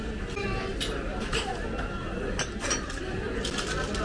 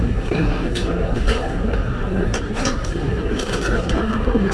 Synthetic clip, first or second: second